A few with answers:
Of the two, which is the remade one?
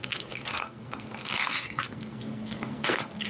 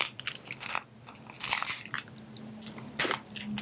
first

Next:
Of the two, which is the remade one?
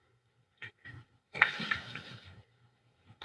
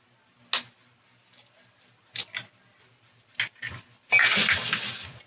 first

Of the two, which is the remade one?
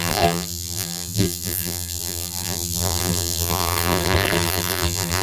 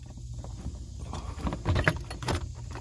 first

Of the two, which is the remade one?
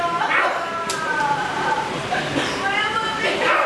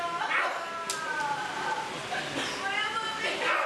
first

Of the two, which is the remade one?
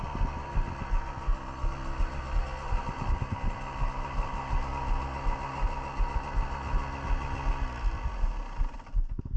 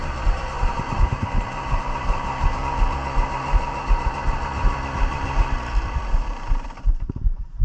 second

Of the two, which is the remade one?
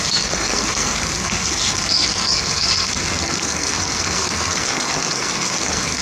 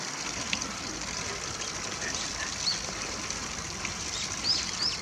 first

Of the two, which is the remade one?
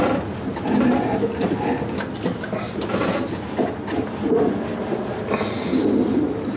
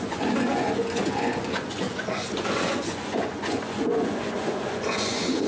second